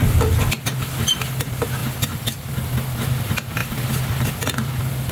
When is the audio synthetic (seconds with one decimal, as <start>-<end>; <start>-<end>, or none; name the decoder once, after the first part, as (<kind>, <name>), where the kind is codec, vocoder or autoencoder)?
1.8-2.5 (vocoder, BigVGAN v2)